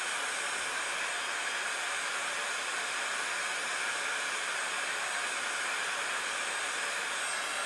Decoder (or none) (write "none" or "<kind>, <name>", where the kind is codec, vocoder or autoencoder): none